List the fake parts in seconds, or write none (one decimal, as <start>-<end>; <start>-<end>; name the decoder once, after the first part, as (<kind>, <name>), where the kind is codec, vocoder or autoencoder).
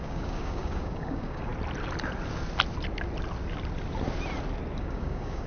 0.0-1.5 (codec, DAC); 4.8-5.5